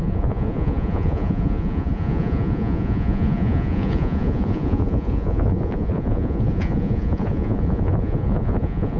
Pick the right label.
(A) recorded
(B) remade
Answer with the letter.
B